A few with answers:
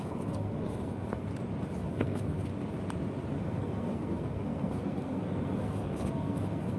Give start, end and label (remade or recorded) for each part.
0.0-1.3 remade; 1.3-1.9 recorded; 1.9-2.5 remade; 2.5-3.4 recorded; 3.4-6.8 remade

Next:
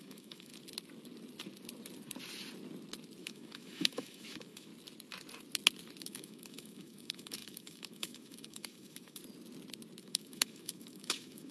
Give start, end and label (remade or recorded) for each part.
0.0-0.5 remade; 0.5-3.2 recorded; 3.2-4.7 remade; 4.7-6.0 recorded; 6.0-9.2 remade; 9.2-10.0 recorded; 10.0-11.5 remade

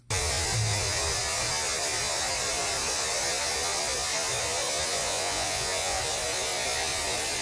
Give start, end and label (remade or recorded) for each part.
0.0-4.9 recorded; 4.9-6.0 remade; 6.0-7.4 recorded

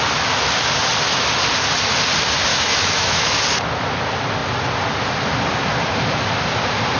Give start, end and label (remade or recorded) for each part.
0.0-2.5 recorded; 2.5-3.4 remade; 3.4-7.0 recorded

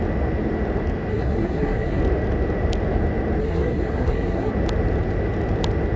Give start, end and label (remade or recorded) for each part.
0.0-1.1 recorded; 1.1-2.0 remade; 2.0-3.4 recorded; 3.4-4.5 remade; 4.5-6.0 recorded

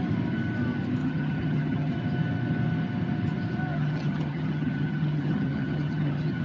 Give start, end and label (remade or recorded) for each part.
0.0-1.0 recorded; 1.0-1.9 remade; 1.9-3.7 recorded; 3.7-6.4 remade

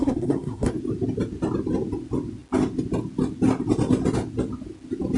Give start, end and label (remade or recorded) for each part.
0.0-0.7 remade; 0.7-5.2 recorded